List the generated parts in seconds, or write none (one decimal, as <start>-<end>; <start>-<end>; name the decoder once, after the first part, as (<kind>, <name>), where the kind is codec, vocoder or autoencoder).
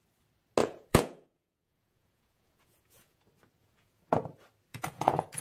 0.6-3.2 (vocoder, Vocos); 3.6-4.2; 4.7-5.4